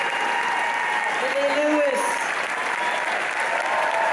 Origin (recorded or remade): recorded